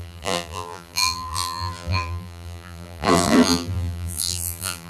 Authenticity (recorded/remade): remade